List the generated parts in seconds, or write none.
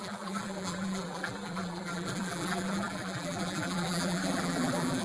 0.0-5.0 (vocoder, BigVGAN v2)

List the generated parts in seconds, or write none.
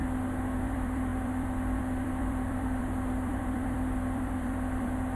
0.6-5.2 (vocoder, BigVGAN v2)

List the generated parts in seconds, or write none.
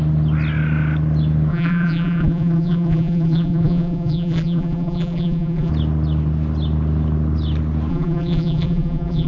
1.5-5.7 (vocoder, BigVGAN v2); 7.9-9.3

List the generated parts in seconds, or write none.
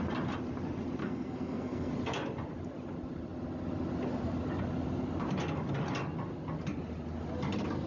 1.0-1.9 (codec, SNAC)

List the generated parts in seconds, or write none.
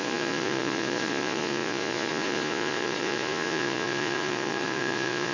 0.0-5.3 (vocoder, Vocos)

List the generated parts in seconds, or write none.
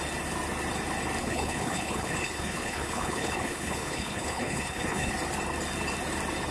1.2-5.1 (codec, HILCodec)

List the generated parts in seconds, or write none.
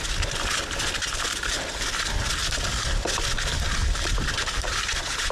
3.8-5.3 (vocoder, BigVGAN v2)